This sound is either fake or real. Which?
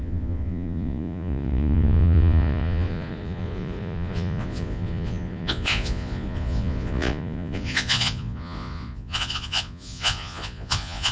fake